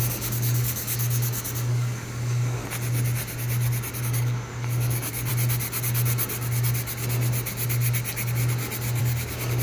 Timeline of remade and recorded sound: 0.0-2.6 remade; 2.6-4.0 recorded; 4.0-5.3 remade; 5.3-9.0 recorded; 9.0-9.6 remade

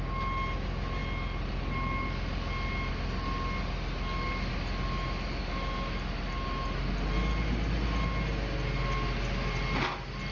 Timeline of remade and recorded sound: 0.0-10.3 recorded

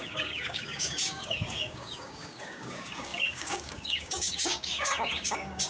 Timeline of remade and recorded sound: 0.0-5.7 remade

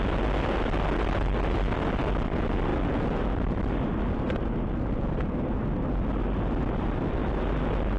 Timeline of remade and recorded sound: 0.0-8.0 recorded

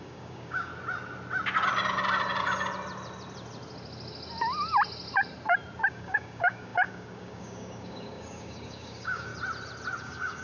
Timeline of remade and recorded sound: 0.0-0.7 remade; 0.7-5.9 recorded; 5.9-9.3 remade; 9.3-10.0 recorded; 10.0-10.4 remade

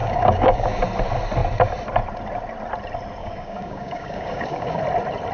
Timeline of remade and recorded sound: 0.0-0.8 remade; 0.8-3.2 recorded; 3.2-4.8 remade; 4.8-5.3 recorded

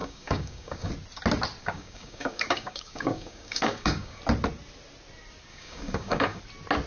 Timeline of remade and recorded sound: 0.0-0.9 remade; 0.9-1.6 recorded; 1.6-4.2 remade; 4.2-5.5 recorded; 5.5-6.4 remade; 6.4-6.9 recorded

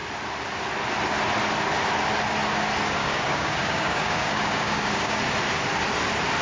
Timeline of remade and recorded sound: 0.0-3.0 recorded; 3.0-5.2 remade; 5.2-6.4 recorded